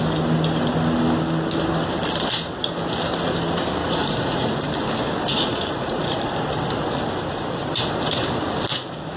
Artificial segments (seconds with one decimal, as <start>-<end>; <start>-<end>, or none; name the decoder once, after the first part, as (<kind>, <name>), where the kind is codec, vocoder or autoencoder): 3.8-4.5 (vocoder, Vocos); 5.3-6.3